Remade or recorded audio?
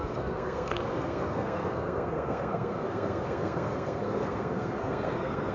remade